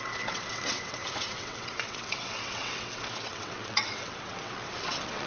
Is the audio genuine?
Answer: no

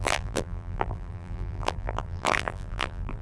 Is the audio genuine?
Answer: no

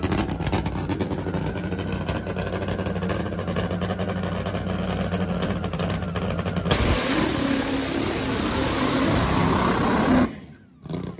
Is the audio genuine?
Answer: yes